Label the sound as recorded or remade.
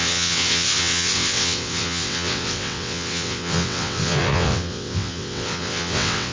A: remade